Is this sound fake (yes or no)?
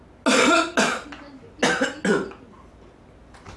no